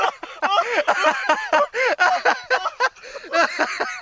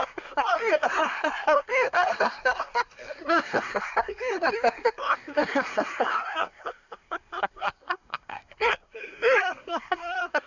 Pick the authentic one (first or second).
first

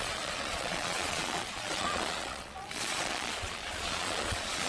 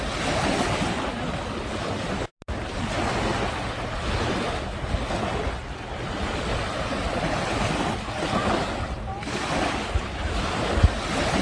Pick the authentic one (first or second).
second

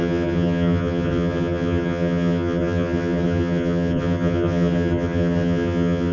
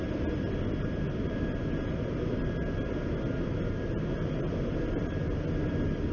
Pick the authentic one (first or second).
second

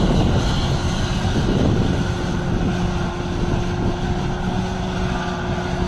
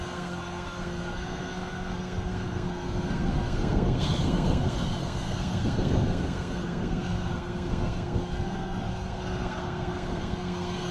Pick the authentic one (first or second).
first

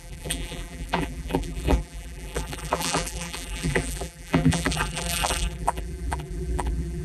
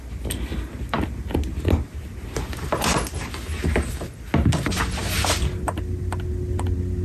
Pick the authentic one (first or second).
second